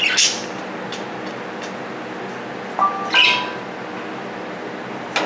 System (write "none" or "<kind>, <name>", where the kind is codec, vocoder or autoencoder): none